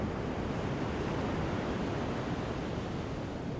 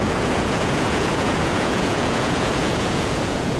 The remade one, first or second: second